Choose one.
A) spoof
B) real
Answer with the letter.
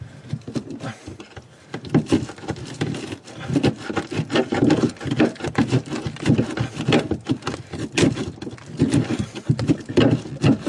B